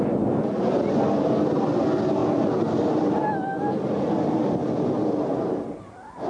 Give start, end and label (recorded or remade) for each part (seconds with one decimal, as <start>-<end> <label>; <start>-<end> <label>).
0.0-6.3 recorded

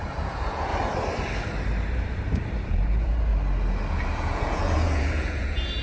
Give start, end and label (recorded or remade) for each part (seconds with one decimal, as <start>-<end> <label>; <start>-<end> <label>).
0.0-0.7 remade; 0.7-2.6 recorded; 2.6-3.3 remade; 3.3-3.9 recorded; 3.9-5.8 remade

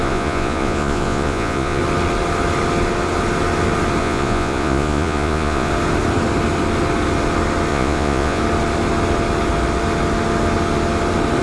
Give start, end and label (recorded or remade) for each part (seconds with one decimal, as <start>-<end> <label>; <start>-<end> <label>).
0.0-1.8 remade; 1.8-4.0 recorded; 4.0-5.7 remade; 5.7-7.7 recorded; 7.7-8.4 remade; 8.4-11.4 recorded

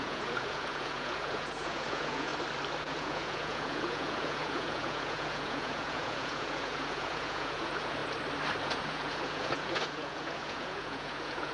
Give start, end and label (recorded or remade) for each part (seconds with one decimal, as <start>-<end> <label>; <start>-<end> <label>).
0.0-2.3 remade; 2.3-2.8 recorded; 2.8-8.0 remade; 8.0-8.6 recorded; 8.6-11.5 remade

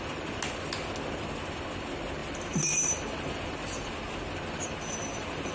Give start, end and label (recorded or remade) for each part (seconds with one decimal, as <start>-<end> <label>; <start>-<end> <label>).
0.0-5.5 recorded

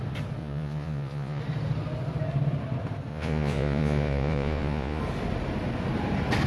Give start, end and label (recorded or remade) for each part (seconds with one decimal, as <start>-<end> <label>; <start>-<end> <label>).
0.0-0.4 recorded; 0.4-1.4 remade; 1.4-3.1 recorded; 3.1-5.0 remade; 5.0-6.5 recorded